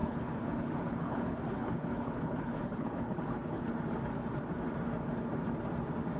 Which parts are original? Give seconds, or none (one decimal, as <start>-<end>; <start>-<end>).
3.7-6.2